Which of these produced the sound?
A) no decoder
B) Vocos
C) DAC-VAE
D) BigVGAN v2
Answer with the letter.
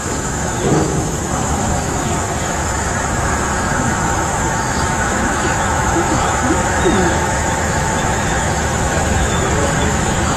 C